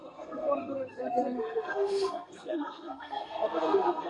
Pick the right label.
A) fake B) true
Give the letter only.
A